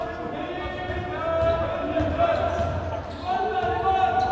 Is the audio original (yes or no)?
yes